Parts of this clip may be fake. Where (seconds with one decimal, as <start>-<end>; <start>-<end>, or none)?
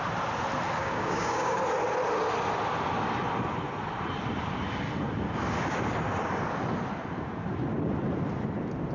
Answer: 0.8-1.6